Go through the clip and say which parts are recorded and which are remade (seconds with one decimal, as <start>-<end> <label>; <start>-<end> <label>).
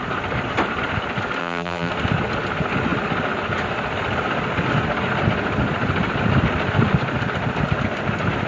0.0-1.4 recorded; 1.4-1.9 remade; 1.9-8.5 recorded